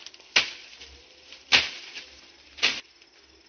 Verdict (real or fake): real